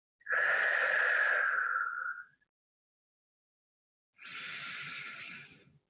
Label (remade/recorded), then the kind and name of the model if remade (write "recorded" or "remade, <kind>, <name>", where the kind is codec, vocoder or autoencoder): recorded